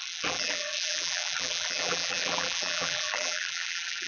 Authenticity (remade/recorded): remade